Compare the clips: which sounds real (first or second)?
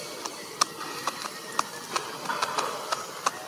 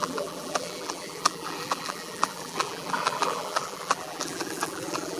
first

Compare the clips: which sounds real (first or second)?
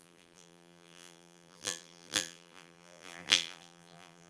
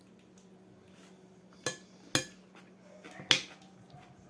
second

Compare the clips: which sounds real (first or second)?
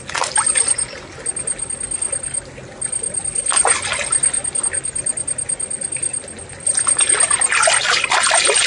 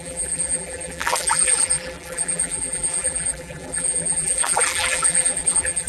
first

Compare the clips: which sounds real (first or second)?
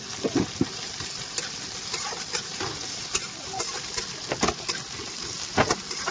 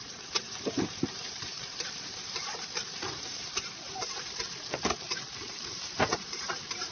first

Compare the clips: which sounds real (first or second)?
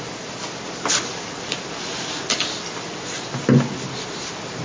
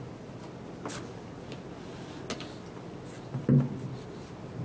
second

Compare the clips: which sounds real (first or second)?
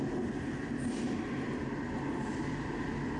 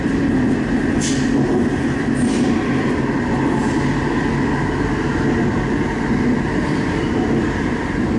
second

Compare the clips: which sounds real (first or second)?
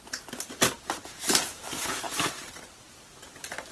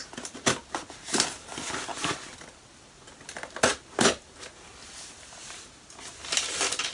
second